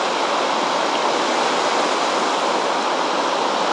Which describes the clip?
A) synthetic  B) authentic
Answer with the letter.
B